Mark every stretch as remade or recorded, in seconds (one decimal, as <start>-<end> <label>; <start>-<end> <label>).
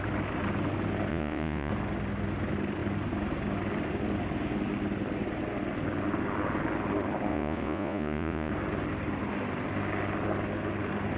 0.0-1.1 recorded; 1.1-1.7 remade; 1.7-7.3 recorded; 7.3-8.5 remade; 8.5-11.2 recorded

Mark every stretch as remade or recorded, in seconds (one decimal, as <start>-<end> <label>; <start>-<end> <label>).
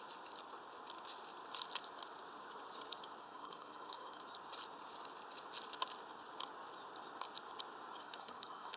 0.0-3.2 recorded; 3.2-4.2 remade; 4.2-8.0 recorded; 8.0-8.8 remade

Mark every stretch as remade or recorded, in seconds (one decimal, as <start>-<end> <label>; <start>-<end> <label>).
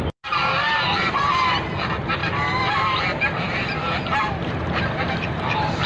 0.0-0.7 recorded; 0.7-1.3 remade; 1.3-2.2 recorded; 2.2-3.0 remade; 3.0-5.9 recorded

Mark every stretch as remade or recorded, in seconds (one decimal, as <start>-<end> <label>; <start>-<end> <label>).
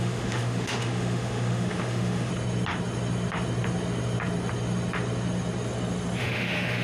0.0-2.3 remade; 2.3-6.2 recorded; 6.2-6.8 remade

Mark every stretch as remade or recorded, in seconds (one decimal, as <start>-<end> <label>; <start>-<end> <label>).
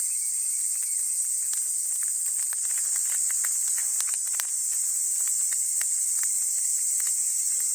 0.0-7.7 recorded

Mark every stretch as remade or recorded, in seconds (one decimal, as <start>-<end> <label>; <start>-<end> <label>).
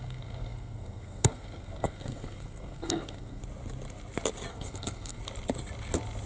0.0-3.4 remade; 3.4-4.5 recorded; 4.5-5.2 remade; 5.2-6.3 recorded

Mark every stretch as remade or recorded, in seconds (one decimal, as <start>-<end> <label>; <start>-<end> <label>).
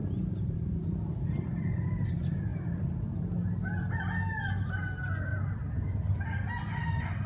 0.0-7.3 recorded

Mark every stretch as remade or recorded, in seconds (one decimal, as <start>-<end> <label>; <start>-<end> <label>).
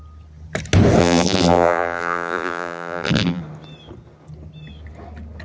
0.0-1.0 recorded; 1.0-3.4 remade; 3.4-5.4 recorded